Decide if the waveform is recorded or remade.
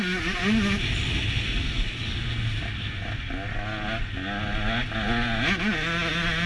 recorded